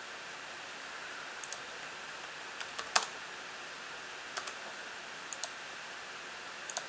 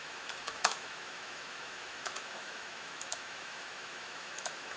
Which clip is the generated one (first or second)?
second